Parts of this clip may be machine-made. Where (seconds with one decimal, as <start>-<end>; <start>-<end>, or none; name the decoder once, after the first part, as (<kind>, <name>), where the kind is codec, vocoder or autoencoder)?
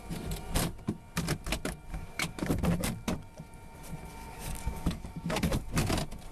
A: 1.9-2.5 (codec, DAC); 4.2-5.7